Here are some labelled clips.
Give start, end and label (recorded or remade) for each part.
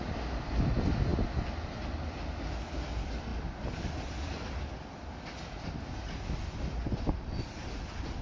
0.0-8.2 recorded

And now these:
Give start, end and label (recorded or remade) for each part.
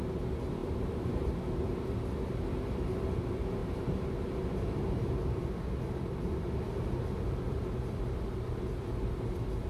0.0-0.6 recorded; 0.6-1.3 remade; 1.3-9.7 recorded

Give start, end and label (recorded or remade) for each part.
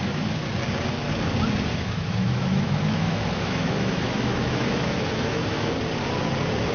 0.0-0.5 remade; 0.5-1.7 recorded; 1.7-5.7 remade; 5.7-6.7 recorded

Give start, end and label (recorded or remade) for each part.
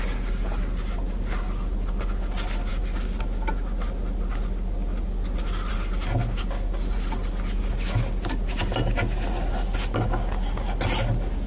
0.0-11.5 recorded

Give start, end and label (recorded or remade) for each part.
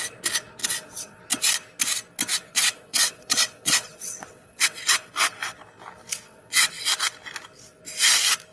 0.0-0.6 recorded; 0.6-1.2 remade; 1.2-2.3 recorded; 2.3-5.1 remade; 5.1-6.1 recorded; 6.1-6.7 remade; 6.7-8.5 recorded